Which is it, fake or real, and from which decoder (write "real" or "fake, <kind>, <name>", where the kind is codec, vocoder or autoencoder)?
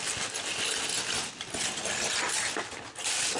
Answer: real